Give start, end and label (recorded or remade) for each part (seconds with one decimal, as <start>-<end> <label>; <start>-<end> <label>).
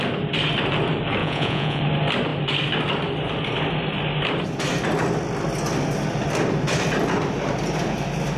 0.0-1.2 recorded; 1.2-1.8 remade; 1.8-8.4 recorded